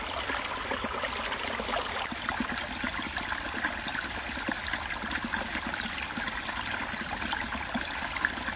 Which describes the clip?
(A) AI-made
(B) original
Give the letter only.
B